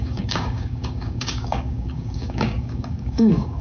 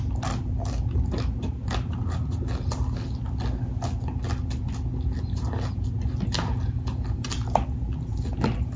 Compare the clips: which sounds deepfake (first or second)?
first